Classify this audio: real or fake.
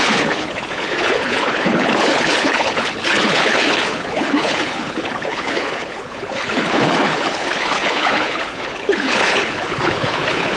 fake